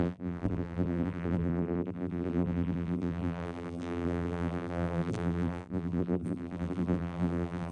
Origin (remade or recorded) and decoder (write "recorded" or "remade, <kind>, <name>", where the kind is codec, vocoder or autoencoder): remade, vocoder, BigVGAN v2